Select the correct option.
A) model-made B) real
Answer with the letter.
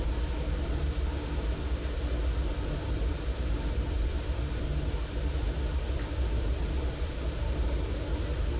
B